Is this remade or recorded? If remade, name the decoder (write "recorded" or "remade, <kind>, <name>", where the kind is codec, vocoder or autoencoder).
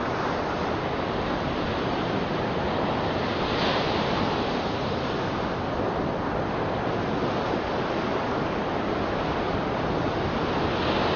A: recorded